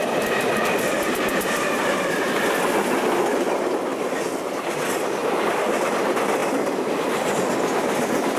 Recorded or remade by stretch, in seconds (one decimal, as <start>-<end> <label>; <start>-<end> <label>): 0.0-8.4 recorded